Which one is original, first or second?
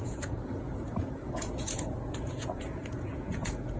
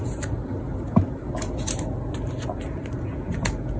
second